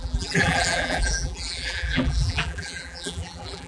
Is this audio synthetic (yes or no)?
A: yes